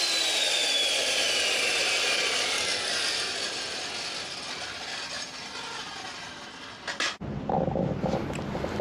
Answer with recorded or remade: recorded